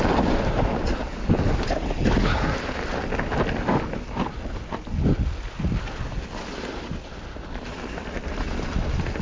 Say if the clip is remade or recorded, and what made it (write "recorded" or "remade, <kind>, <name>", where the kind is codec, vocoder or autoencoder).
recorded